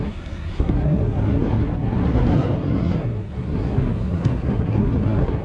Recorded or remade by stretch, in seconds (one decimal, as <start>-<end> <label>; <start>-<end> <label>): 0.0-5.4 remade